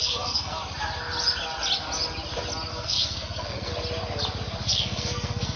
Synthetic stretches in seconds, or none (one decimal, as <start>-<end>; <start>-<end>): 0.0-0.6; 2.7-3.7; 4.6-5.6

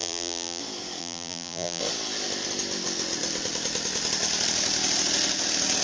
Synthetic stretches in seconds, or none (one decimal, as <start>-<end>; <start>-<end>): 0.0-0.6; 1.0-1.8

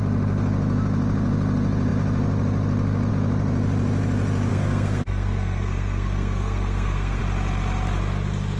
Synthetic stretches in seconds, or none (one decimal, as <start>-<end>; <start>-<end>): 4.5-7.2

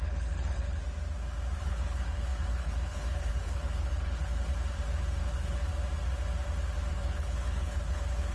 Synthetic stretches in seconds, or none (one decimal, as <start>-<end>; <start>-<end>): 0.0-0.8; 1.6-4.5; 5.2-5.7; 6.9-8.3

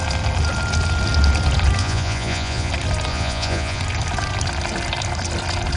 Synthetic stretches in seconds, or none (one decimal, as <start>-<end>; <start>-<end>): 1.8-2.7; 3.1-3.8